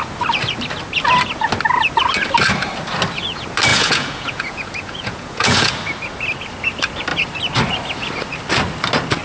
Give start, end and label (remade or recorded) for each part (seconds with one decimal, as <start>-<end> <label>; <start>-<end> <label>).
0.0-3.7 recorded; 3.7-5.7 remade; 5.7-9.2 recorded